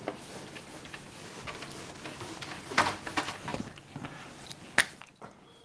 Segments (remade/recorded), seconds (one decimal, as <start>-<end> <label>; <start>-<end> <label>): 0.0-5.6 recorded